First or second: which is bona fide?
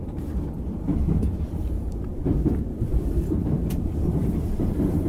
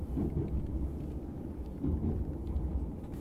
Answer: second